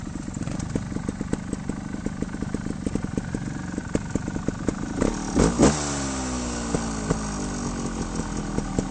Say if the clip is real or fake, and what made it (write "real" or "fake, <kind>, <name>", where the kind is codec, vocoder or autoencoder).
real